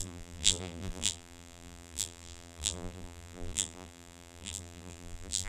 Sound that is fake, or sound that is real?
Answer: fake